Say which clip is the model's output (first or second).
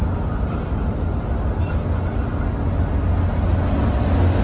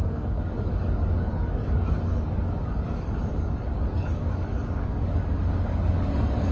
second